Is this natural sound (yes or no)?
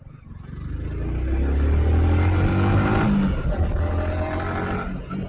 yes